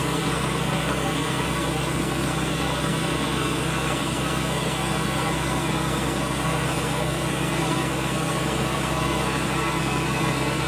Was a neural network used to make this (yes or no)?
yes